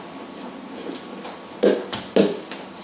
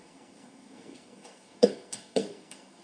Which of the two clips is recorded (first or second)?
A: first